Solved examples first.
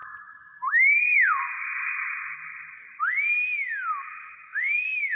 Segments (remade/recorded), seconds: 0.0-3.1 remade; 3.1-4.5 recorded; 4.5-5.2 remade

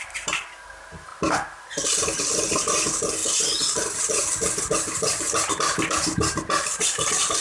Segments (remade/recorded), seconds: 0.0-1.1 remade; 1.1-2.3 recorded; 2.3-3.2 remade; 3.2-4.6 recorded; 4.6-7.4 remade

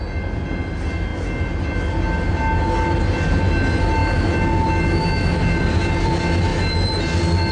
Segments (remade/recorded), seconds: 0.0-7.5 recorded

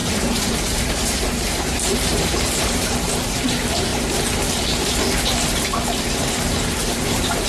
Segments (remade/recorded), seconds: 0.0-3.9 remade; 3.9-6.3 recorded; 6.3-7.5 remade

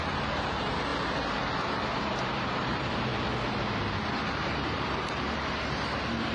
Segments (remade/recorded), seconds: 0.0-0.9 remade; 0.9-1.9 recorded; 1.9-3.1 remade; 3.1-4.3 recorded; 4.3-6.3 remade

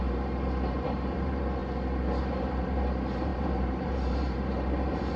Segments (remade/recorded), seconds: 0.0-1.6 remade; 1.6-2.2 recorded; 2.2-5.2 remade

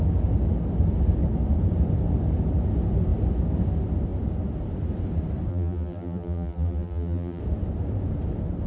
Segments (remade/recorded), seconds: 0.0-5.5 recorded; 5.5-7.4 remade; 7.4-8.7 recorded